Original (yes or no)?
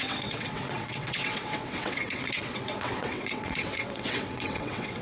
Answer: no